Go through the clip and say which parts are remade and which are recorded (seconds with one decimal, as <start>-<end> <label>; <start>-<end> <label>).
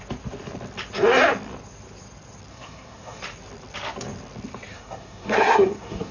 0.0-2.5 recorded; 2.5-3.2 remade; 3.2-4.7 recorded; 4.7-6.1 remade